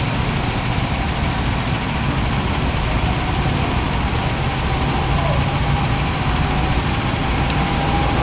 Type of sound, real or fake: real